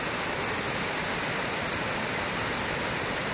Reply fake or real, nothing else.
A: real